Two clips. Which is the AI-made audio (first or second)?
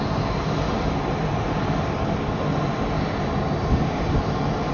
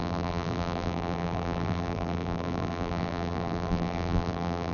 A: second